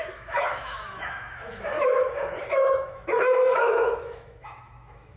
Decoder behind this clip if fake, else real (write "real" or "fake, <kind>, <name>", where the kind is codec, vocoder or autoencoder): fake, autoencoder, DAC-VAE